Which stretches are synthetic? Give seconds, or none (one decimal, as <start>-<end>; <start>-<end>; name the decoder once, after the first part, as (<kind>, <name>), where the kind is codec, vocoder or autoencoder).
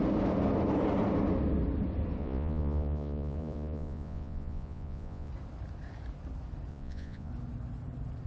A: 2.2-5.3 (vocoder, Vocos); 6.7-7.3